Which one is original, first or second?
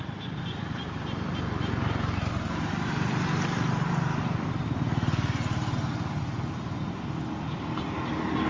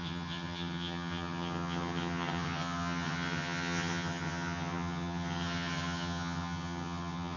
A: first